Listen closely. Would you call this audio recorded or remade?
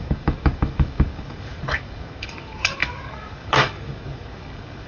remade